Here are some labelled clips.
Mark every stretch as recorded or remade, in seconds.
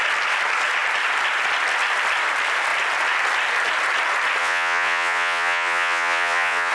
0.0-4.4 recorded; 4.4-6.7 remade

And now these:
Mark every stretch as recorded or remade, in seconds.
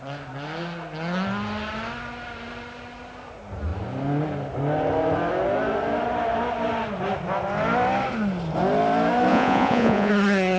0.0-9.3 recorded; 9.3-10.1 remade; 10.1-10.6 recorded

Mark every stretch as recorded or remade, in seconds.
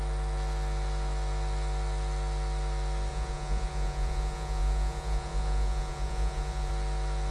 0.0-3.1 recorded; 3.1-6.7 remade; 6.7-7.3 recorded